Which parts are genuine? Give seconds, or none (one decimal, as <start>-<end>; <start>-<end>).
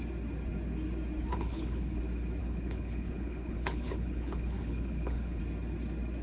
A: 0.0-1.3; 2.0-2.4; 5.4-6.2